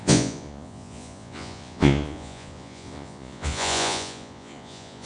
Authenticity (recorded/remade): remade